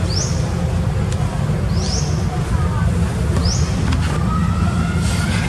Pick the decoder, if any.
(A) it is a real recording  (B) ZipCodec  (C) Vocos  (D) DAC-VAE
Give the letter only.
A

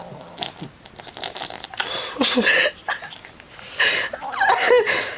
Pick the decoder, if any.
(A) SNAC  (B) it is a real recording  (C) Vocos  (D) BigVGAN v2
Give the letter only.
B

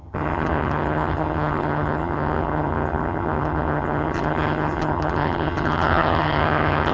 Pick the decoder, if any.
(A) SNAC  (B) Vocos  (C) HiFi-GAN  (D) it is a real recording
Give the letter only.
C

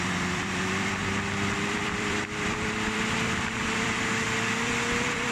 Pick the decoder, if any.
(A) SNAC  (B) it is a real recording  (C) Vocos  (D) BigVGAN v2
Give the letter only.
D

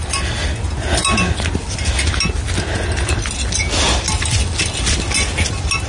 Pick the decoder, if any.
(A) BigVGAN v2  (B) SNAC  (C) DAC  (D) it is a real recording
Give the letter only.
D